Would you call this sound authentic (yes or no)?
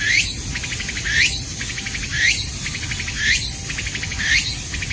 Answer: yes